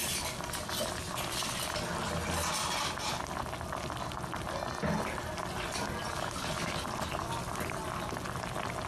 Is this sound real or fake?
real